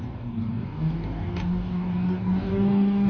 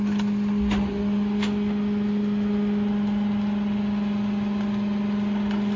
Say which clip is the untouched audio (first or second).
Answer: second